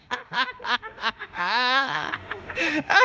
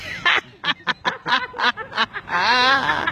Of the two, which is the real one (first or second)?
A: second